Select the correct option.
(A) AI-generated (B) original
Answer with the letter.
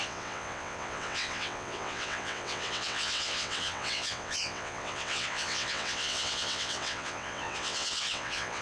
A